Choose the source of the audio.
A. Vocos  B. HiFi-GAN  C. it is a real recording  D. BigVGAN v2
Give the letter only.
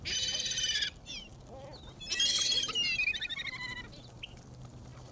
C